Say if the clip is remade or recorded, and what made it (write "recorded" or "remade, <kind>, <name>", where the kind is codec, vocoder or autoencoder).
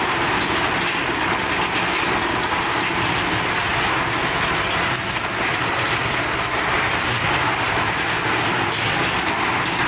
recorded